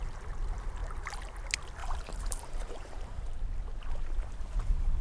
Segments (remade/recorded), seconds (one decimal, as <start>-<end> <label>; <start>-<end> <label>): 0.0-1.8 recorded; 1.8-3.3 remade; 3.3-5.0 recorded